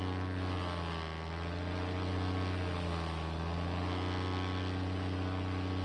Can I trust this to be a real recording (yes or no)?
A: yes